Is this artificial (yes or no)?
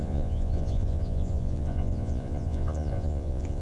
yes